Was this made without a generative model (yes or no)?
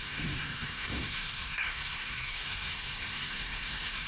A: no